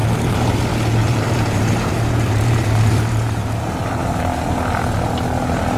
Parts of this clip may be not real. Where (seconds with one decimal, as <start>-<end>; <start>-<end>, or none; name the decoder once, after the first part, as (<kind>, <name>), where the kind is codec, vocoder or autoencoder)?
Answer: 0.0-0.6 (vocoder, BigVGAN v2); 1.0-4.2